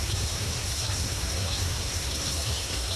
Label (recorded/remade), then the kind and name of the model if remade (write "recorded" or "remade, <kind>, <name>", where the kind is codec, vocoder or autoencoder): remade, codec, SNAC